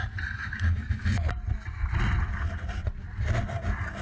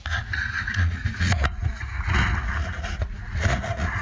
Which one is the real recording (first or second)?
first